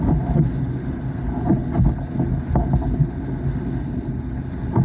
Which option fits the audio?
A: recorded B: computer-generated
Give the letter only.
A